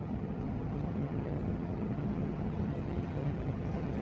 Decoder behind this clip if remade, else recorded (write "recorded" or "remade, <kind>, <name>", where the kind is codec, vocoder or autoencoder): remade, vocoder, HiFi-GAN